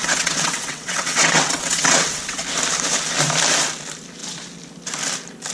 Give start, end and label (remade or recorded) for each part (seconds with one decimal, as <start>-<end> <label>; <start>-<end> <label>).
0.0-2.4 remade; 2.4-5.5 recorded